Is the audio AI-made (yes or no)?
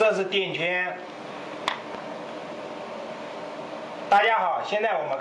no